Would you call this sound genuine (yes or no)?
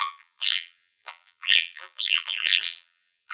no